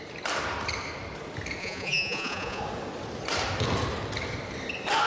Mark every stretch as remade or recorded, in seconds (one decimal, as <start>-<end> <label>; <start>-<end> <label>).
0.0-1.6 recorded; 1.6-2.6 remade; 2.6-5.1 recorded